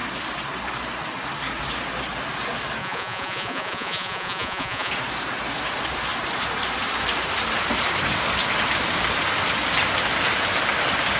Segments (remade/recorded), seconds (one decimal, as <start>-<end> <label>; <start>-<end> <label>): 0.0-2.8 recorded; 2.8-4.9 remade; 4.9-11.2 recorded